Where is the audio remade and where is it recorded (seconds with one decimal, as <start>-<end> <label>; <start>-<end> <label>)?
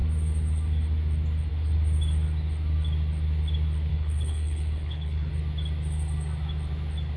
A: 0.0-3.9 recorded; 3.9-5.3 remade; 5.3-7.2 recorded